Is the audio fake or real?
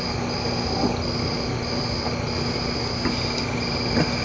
real